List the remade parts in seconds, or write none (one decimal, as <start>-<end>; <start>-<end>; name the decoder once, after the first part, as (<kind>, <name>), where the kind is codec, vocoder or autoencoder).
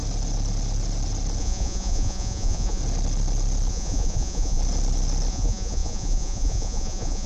1.4-2.8 (vocoder, Vocos); 3.7-4.6; 5.3-7.3